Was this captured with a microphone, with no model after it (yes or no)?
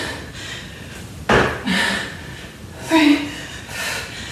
yes